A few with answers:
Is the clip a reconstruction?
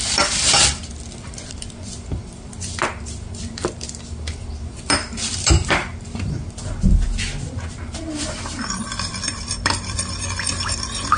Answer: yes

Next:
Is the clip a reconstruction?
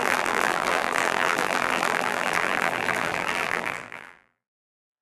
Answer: yes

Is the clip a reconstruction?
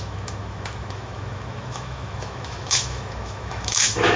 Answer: yes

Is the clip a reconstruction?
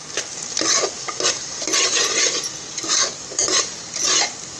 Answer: no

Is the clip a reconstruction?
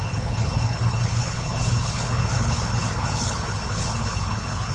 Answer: yes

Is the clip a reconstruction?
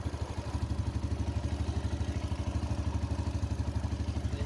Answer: no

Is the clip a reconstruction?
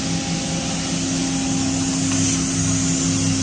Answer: no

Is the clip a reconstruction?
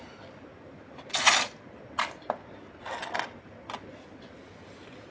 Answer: no